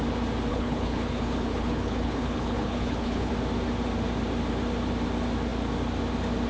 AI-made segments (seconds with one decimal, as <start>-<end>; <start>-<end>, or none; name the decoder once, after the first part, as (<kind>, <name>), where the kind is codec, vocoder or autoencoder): 0.5-3.3 (codec, HILCodec)